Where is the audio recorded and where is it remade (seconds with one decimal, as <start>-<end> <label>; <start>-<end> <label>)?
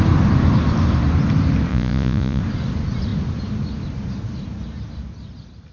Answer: 0.0-1.7 recorded; 1.7-2.4 remade; 2.4-5.7 recorded